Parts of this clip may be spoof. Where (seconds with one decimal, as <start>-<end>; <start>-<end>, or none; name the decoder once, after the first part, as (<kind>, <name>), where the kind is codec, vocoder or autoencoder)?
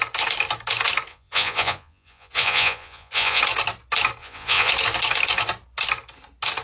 1.1-3.4 (vocoder, Vocos); 4.2-4.7